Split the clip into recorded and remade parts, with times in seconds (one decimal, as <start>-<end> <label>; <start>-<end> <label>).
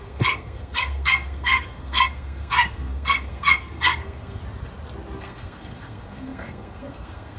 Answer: 0.0-4.4 remade; 4.4-5.2 recorded; 5.2-7.4 remade